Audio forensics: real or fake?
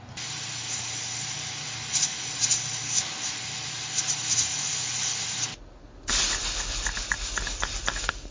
real